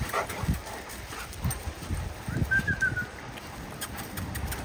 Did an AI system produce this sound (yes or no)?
yes